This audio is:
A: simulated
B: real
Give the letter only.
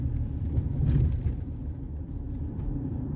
A